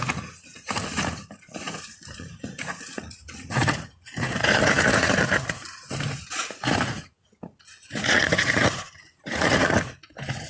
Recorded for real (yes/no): no